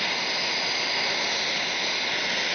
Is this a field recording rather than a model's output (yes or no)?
yes